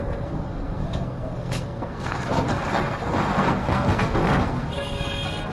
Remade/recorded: remade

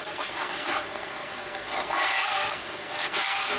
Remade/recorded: remade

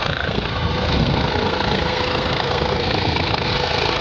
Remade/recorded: remade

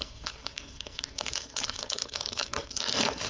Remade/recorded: remade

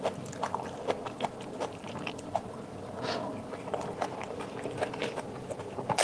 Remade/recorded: recorded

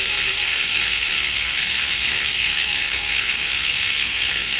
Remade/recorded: remade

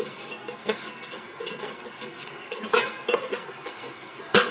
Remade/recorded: remade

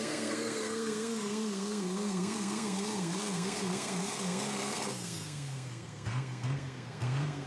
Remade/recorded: remade